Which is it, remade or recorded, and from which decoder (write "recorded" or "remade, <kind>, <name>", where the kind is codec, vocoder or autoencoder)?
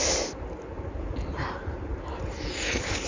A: recorded